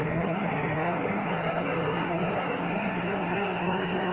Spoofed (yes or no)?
yes